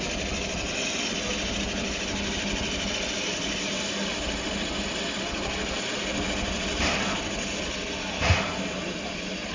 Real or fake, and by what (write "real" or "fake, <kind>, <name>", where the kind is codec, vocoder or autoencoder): real